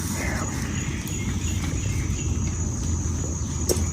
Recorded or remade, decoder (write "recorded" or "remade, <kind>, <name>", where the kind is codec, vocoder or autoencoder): recorded